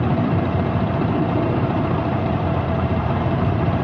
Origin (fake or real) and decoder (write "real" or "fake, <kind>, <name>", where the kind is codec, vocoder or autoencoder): fake, vocoder, BigVGAN v2